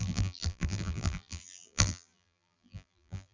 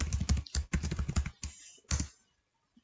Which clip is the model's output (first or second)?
first